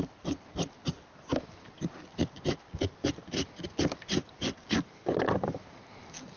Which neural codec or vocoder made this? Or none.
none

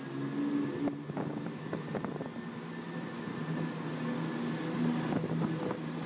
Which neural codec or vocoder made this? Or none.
none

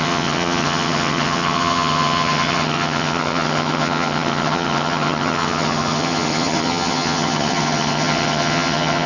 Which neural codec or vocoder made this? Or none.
vocoder, HiFi-GAN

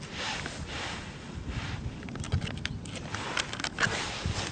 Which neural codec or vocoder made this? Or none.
none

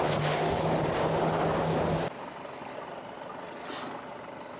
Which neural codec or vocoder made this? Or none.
none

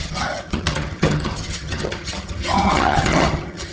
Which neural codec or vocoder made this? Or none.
vocoder, HiFi-GAN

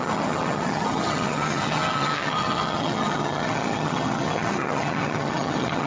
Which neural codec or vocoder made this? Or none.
vocoder, HiFi-GAN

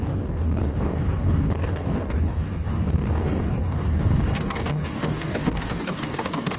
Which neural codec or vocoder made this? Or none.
codec, DAC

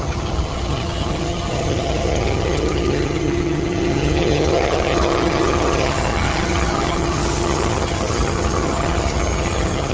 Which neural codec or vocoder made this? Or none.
vocoder, HiFi-GAN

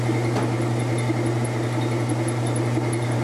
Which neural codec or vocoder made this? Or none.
none